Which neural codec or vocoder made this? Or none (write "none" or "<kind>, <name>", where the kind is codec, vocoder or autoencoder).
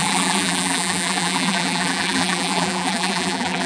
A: vocoder, BigVGAN v2